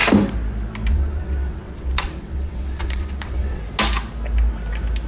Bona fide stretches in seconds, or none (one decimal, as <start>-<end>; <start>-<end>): 0.0-0.9; 3.6-5.1